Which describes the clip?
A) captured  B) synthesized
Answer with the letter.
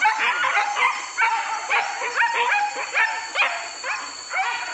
A